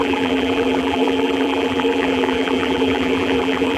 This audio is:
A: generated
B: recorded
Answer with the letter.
A